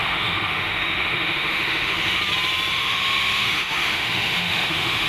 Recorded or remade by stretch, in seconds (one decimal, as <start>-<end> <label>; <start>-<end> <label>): 0.0-2.2 remade; 2.2-2.7 recorded; 2.7-5.1 remade